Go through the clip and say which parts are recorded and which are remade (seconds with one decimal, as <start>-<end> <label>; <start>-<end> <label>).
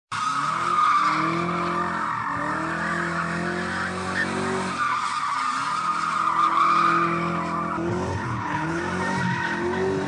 0.0-8.2 recorded; 8.2-8.8 remade; 8.8-10.1 recorded